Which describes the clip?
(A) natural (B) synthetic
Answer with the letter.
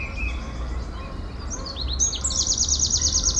A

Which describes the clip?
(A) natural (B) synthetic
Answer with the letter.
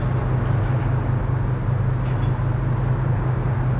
A